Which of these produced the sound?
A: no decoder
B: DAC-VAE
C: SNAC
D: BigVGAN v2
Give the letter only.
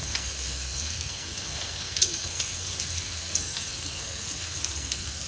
C